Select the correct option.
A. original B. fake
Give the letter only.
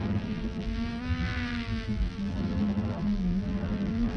B